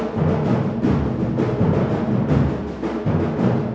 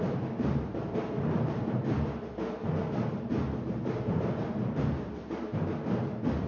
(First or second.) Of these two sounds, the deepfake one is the second